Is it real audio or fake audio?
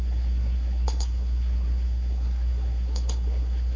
fake